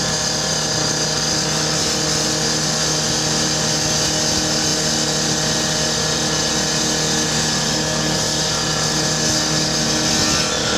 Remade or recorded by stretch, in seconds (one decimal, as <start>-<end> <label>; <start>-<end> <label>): 0.0-10.8 recorded